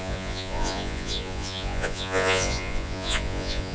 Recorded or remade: remade